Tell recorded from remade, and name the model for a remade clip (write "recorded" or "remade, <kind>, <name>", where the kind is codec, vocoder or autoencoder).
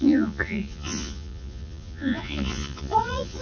remade, vocoder, Vocos